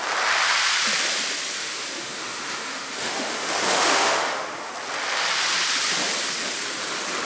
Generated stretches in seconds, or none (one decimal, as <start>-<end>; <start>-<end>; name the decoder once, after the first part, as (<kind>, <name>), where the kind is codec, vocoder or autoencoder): 1.6-4.7 (autoencoder, DAC-VAE)